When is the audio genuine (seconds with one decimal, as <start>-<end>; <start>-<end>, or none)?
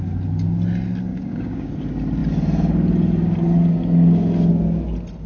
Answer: 0.0-1.1; 1.7-5.3